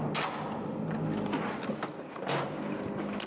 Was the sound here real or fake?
real